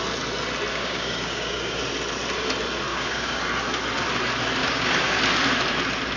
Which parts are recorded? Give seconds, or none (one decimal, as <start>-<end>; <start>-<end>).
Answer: 0.0-0.7; 1.8-2.9; 3.4-4.6; 5.2-6.2